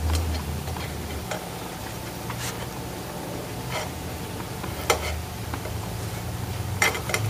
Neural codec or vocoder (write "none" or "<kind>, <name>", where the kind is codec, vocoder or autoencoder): vocoder, BigVGAN v2